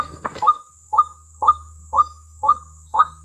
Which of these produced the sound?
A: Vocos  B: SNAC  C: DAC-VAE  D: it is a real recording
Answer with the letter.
B